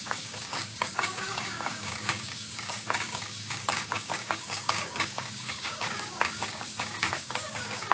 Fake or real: fake